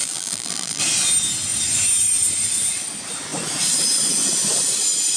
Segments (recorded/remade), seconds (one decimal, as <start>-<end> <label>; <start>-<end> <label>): 0.0-0.8 remade; 0.8-5.2 recorded